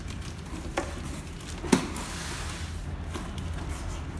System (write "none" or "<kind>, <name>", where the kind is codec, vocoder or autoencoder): none